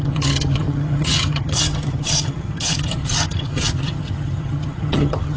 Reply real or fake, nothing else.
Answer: fake